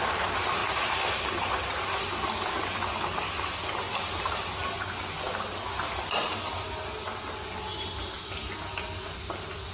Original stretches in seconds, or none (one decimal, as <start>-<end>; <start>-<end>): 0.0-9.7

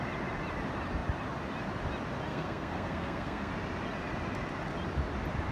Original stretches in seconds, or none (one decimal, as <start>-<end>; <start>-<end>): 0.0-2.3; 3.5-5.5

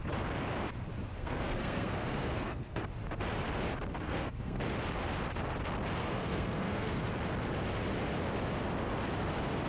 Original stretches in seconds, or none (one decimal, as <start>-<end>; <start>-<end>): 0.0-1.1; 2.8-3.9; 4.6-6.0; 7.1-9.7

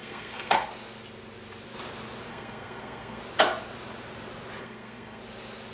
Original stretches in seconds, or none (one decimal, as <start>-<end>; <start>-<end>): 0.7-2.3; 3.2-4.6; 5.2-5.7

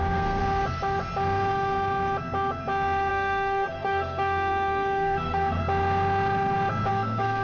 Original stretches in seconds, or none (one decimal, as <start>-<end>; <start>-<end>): 0.4-3.1; 5.6-6.9

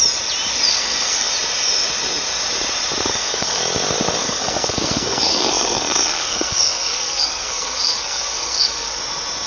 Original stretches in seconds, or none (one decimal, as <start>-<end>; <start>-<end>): 0.0-0.7; 1.3-3.1; 3.6-4.2; 9.0-9.5

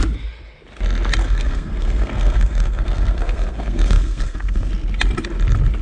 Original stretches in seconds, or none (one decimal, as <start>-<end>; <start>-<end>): 0.0-1.2; 4.7-5.8